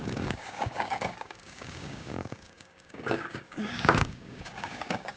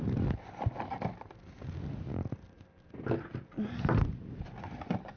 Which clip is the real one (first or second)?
second